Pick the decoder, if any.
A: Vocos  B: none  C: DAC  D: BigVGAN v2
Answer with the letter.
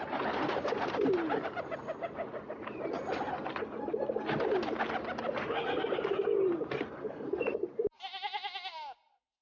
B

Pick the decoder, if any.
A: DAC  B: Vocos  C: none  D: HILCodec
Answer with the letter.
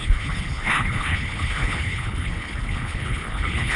D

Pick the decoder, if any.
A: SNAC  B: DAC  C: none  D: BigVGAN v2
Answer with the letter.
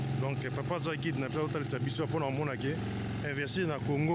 C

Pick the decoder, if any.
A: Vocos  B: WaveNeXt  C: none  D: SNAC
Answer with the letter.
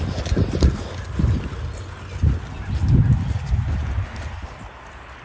C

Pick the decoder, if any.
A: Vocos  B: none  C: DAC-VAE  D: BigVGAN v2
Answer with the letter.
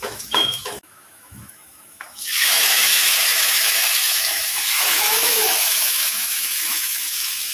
C